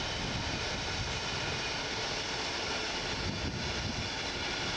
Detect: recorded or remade recorded